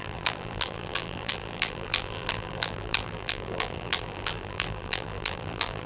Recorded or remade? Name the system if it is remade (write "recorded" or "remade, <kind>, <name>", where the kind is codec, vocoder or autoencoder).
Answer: remade, vocoder, BigVGAN v2